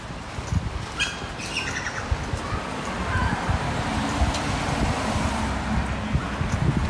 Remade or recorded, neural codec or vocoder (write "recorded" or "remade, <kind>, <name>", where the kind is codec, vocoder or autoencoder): recorded